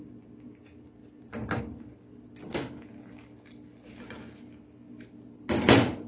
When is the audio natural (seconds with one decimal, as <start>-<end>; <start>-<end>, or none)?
0.0-6.1

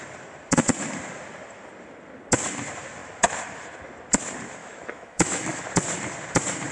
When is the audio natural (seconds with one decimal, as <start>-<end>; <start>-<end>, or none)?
0.0-4.6; 5.6-6.7